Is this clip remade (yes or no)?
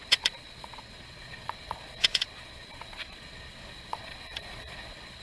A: yes